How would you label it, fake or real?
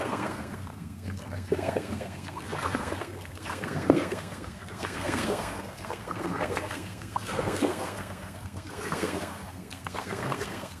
fake